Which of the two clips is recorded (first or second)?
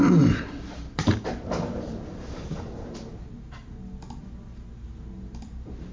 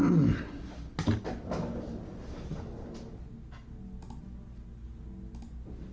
second